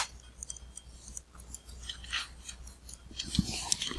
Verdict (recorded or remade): recorded